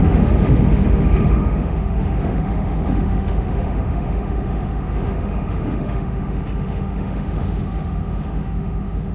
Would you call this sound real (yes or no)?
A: no